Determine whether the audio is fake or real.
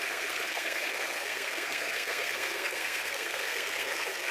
fake